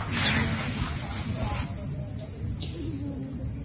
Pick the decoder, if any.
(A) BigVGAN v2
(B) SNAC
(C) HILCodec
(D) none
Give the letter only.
D